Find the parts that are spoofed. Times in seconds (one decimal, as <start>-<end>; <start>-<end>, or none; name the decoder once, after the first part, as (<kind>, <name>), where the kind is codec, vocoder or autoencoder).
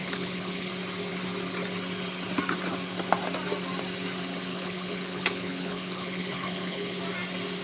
0.0-0.7 (codec, HILCodec); 4.5-7.0